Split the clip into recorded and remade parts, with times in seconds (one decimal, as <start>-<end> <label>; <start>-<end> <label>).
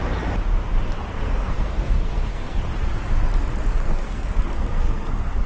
0.0-1.1 recorded; 1.1-2.6 remade; 2.6-3.7 recorded; 3.7-5.5 remade